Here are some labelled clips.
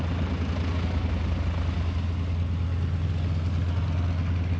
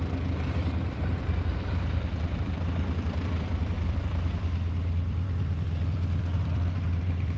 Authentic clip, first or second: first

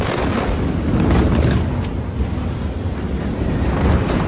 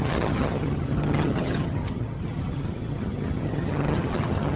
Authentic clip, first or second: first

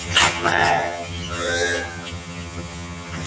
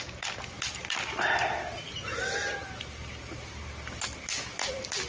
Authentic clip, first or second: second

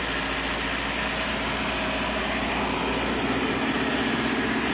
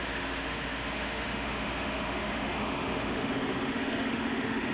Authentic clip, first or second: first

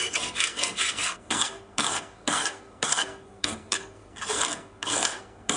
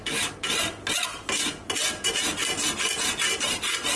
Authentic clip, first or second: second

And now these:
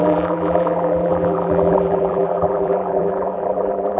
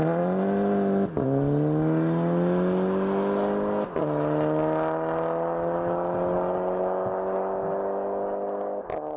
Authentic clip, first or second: second